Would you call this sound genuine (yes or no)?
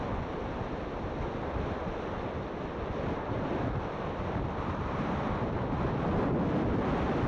yes